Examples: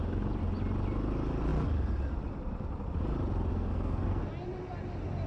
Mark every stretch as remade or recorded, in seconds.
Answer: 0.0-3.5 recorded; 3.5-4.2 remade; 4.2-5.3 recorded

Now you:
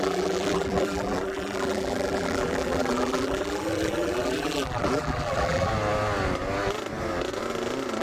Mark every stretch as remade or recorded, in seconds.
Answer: 0.0-5.7 remade; 5.7-8.0 recorded

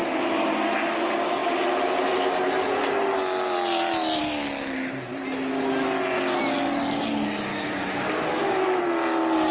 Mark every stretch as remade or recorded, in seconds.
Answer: 0.0-7.5 recorded; 7.5-8.8 remade; 8.8-9.5 recorded